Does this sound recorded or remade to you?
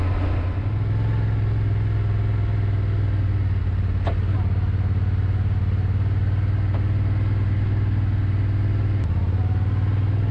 recorded